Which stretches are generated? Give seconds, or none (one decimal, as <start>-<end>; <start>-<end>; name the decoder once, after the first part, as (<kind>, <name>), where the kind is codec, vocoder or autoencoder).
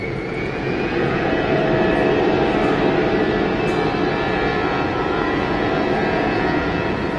0.0-1.6 (vocoder, Vocos); 4.1-7.2